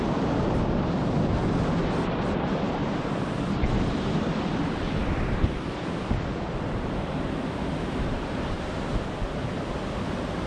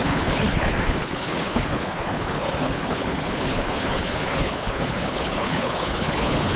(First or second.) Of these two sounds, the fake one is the second